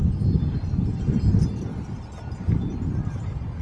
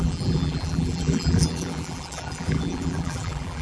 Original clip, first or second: first